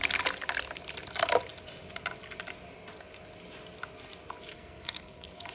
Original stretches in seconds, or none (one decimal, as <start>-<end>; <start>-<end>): 0.0-4.5